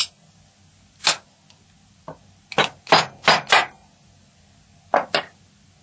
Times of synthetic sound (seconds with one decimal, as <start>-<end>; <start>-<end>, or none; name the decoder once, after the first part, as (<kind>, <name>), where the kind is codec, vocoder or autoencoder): none